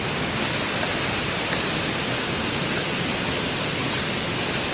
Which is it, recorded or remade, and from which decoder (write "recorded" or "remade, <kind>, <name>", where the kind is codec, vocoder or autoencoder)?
recorded